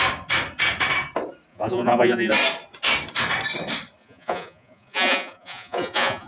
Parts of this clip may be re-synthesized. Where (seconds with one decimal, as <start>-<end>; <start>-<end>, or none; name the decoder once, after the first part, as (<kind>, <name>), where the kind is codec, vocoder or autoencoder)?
1.5-2.3 (vocoder, Vocos); 4.0-6.3